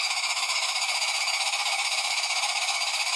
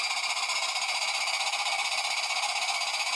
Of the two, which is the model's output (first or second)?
first